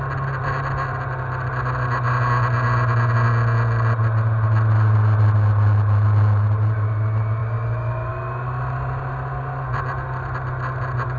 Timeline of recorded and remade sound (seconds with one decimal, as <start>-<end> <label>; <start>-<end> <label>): 0.0-11.2 recorded